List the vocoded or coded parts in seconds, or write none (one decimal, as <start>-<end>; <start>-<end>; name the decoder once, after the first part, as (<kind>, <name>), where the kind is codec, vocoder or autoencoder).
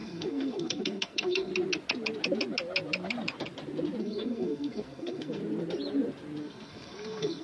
0.0-1.5 (codec, SNAC); 4.0-5.4; 6.4-7.4